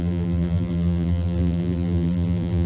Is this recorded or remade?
remade